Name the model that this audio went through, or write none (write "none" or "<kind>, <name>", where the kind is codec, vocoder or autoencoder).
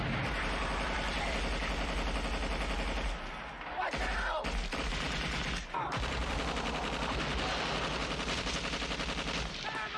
none